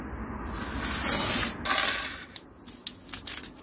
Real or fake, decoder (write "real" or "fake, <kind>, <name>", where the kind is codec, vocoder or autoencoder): real